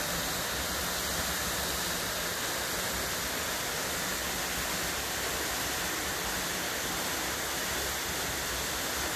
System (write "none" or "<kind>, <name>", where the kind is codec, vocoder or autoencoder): none